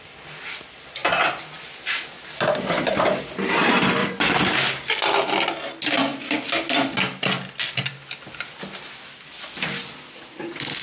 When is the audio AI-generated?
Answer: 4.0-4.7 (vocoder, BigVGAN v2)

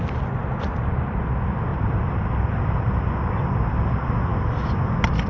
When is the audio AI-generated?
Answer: 0.4-1.2 (vocoder, BigVGAN v2); 1.7-2.6

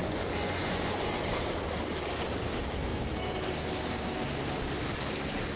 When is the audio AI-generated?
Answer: 0.0-1.1 (vocoder, Vocos)

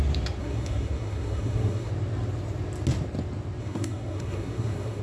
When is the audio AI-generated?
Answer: 0.4-1.9 (codec, SNAC); 3.6-5.0

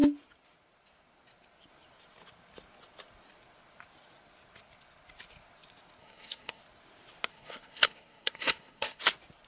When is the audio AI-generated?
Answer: 6.0-6.6 (codec, SNAC); 7.3-9.0

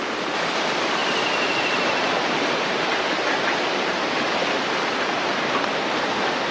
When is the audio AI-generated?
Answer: none